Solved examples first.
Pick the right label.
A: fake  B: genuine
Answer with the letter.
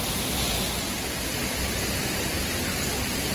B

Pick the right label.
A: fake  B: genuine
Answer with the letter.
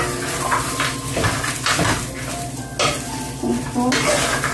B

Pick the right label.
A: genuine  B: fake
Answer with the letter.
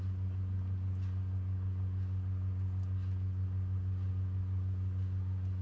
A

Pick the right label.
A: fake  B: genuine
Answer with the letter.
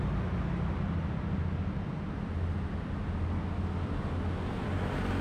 B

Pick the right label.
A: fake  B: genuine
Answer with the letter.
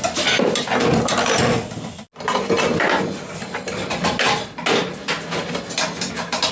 B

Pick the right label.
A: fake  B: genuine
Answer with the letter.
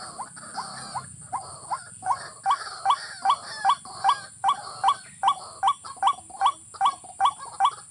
B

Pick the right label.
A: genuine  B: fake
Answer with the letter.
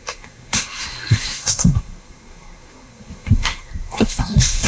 B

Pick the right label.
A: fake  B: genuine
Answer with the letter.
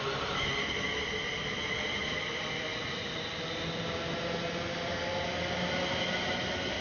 B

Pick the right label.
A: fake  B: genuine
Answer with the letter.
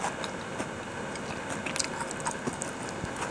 B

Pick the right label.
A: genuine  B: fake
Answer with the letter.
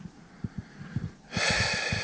A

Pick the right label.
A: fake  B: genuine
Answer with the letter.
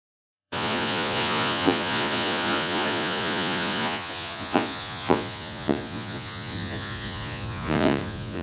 A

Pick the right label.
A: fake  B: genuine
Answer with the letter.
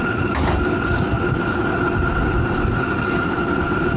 B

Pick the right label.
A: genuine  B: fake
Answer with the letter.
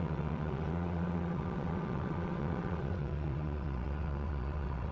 B